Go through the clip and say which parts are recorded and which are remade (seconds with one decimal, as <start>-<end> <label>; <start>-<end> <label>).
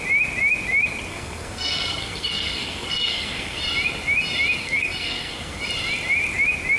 0.0-1.1 recorded; 1.1-3.6 remade; 3.6-4.6 recorded; 4.6-5.6 remade; 5.6-6.8 recorded